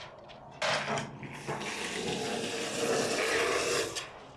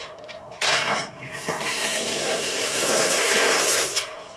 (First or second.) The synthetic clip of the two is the second